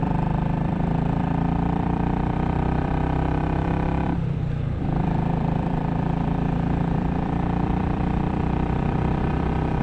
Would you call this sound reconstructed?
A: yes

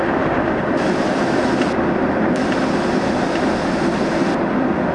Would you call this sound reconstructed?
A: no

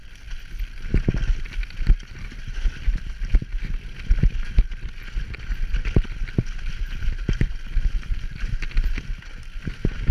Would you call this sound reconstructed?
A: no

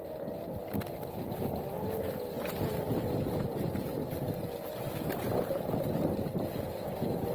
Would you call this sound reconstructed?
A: yes